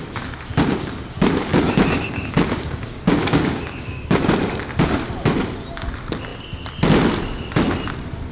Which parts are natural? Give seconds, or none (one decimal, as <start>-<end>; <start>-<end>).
0.0-1.5; 4.2-8.3